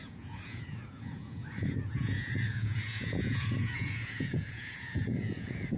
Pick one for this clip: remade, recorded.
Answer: remade